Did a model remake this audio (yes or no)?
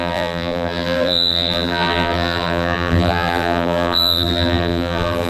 yes